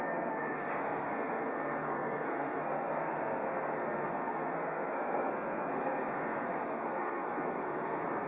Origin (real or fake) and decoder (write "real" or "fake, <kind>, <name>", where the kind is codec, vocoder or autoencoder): fake, codec, SNAC